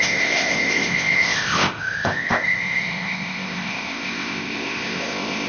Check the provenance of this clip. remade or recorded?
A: remade